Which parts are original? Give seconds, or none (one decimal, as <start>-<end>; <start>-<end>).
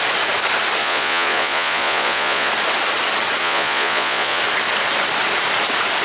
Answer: 0.0-0.8; 2.5-3.4; 4.4-6.0